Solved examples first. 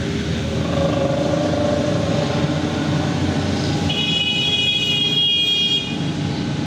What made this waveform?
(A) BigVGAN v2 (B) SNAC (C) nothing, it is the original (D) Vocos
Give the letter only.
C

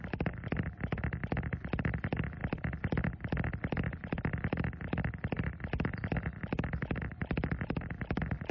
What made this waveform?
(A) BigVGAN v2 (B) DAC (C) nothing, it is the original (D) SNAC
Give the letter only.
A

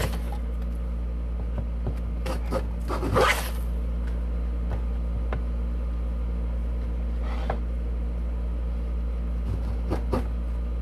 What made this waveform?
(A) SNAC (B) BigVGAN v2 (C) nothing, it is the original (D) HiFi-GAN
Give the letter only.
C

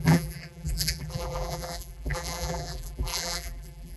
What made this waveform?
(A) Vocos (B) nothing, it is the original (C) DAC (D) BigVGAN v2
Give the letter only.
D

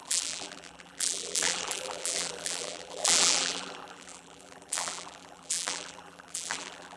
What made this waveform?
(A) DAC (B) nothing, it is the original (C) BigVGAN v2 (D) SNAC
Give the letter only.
C